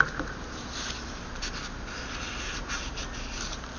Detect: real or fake real